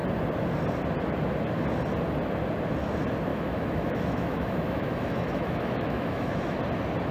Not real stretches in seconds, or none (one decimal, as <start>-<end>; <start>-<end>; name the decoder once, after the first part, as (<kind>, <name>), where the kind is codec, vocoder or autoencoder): 3.3-6.6 (autoencoder, DAC-VAE)